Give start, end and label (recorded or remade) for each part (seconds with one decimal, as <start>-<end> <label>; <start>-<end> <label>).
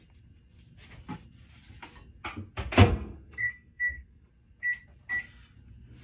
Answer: 0.0-2.8 recorded; 2.8-4.3 remade; 4.3-6.0 recorded